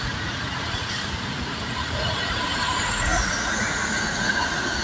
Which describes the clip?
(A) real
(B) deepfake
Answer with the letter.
B